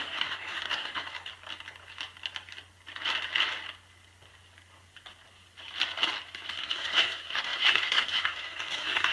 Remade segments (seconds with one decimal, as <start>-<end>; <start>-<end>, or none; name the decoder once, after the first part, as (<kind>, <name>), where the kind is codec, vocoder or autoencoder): 0.0-1.3 (codec, SNAC); 6.5-9.1